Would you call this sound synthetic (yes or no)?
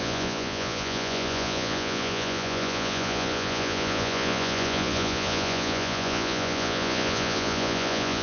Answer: yes